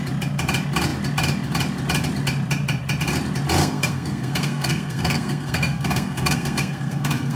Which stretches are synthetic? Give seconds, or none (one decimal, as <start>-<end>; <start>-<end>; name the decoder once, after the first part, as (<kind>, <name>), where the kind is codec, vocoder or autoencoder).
3.6-7.4 (codec, SNAC)